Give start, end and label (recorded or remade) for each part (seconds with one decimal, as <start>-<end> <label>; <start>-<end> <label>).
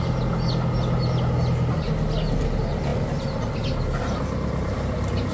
0.0-5.3 recorded